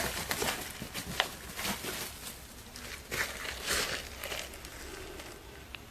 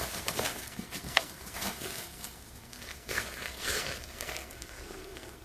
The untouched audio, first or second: first